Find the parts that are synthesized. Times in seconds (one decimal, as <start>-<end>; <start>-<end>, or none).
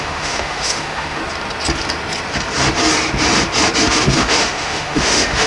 0.0-1.2; 3.9-5.5